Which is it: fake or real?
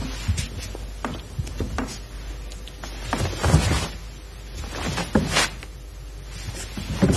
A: real